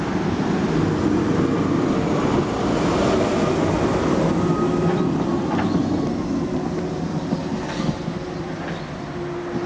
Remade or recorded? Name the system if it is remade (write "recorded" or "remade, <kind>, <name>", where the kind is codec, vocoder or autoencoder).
recorded